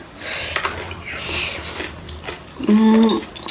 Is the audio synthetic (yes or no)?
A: no